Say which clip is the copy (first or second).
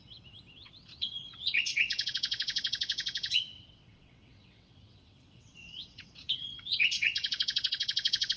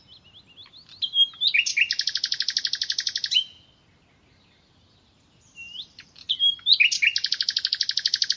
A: first